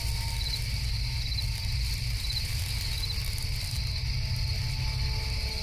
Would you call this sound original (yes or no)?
yes